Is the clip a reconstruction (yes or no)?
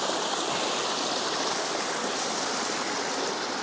no